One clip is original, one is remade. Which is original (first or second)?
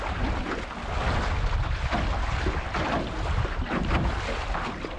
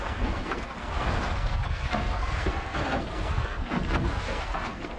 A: first